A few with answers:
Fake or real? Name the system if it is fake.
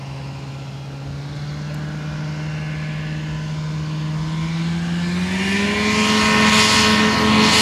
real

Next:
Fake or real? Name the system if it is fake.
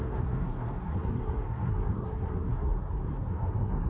fake, codec, SNAC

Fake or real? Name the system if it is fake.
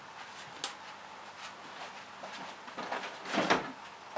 real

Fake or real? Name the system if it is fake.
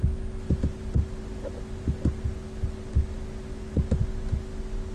real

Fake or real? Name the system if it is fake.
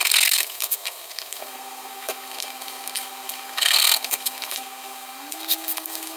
fake, codec, SNAC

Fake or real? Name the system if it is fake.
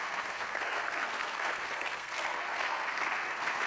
fake, codec, SNAC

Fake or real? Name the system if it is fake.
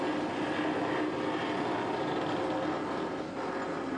real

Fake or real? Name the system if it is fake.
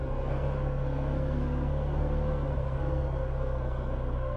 fake, codec, SNAC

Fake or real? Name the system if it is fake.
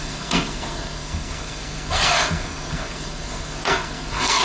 fake, codec, SNAC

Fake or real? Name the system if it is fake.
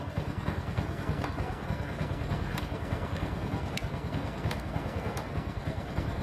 fake, codec, SNAC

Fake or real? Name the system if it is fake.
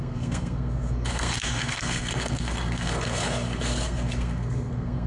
fake, codec, SNAC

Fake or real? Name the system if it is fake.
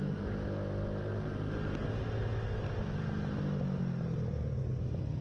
real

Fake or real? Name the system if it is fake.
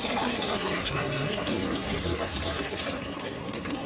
fake, codec, SNAC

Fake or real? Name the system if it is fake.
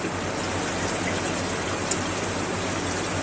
real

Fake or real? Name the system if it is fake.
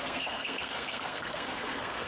fake, codec, SNAC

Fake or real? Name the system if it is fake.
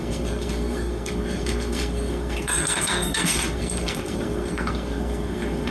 fake, codec, SNAC